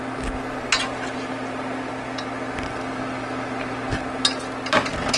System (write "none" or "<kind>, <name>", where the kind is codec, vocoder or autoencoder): none